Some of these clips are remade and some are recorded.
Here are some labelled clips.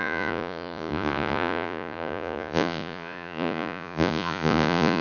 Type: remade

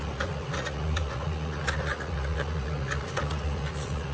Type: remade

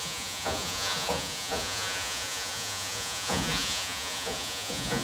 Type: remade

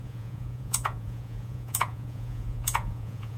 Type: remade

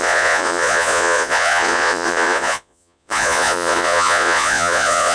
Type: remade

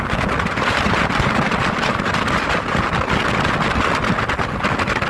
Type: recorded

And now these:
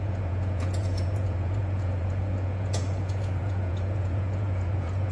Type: remade